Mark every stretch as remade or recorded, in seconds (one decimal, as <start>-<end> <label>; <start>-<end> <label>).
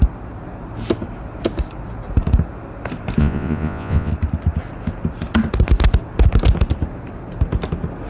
0.0-3.2 recorded; 3.2-4.1 remade; 4.1-8.1 recorded